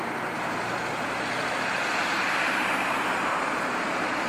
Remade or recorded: remade